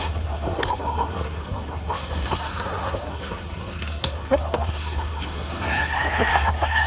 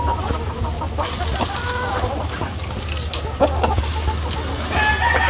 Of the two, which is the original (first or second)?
second